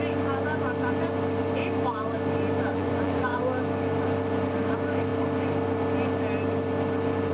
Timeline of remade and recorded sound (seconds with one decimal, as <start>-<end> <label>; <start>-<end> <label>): 0.0-2.7 recorded; 2.7-3.4 remade; 3.4-7.3 recorded